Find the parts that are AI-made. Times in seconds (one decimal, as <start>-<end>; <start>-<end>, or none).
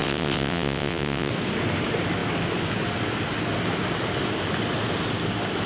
0.0-1.3